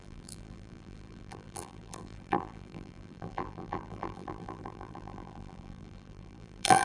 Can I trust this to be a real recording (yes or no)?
no